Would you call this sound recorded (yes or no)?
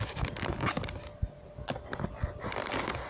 yes